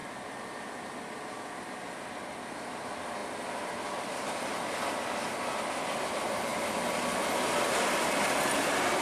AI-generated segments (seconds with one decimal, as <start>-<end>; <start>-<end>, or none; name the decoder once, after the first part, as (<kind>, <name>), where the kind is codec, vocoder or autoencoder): 0.0-2.1 (vocoder, BigVGAN v2)